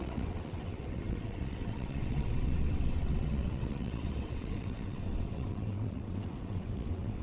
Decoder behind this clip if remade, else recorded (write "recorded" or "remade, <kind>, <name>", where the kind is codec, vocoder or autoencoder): remade, vocoder, WaveNeXt